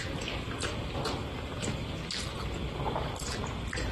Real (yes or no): yes